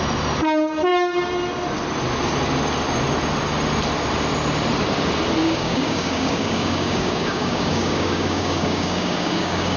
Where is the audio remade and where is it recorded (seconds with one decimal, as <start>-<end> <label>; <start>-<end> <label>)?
0.0-5.4 recorded; 5.4-9.8 remade